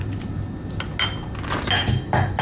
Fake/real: real